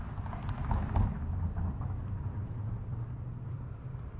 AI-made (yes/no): yes